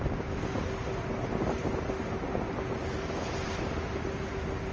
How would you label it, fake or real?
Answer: real